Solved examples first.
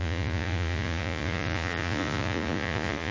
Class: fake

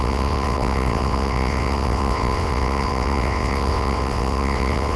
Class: fake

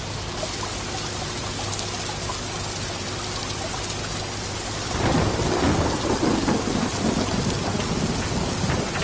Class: real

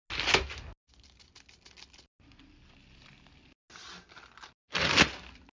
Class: real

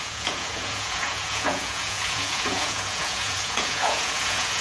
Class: fake